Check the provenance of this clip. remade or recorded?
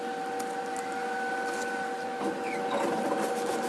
recorded